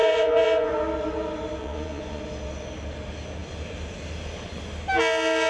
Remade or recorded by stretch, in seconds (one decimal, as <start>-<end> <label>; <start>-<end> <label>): 0.0-0.7 remade; 0.7-1.6 recorded; 1.6-2.2 remade; 2.2-5.5 recorded